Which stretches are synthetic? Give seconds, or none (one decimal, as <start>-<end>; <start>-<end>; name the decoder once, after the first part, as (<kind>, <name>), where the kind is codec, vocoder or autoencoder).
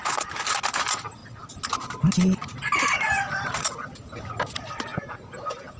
4.9-5.8 (vocoder, Vocos)